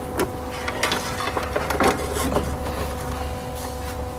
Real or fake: real